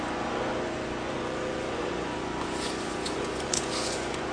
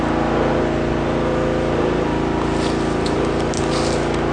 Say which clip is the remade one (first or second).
first